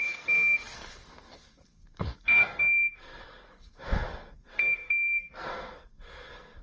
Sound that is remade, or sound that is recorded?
remade